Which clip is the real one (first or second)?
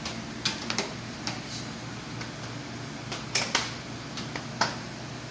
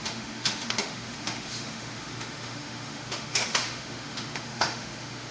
first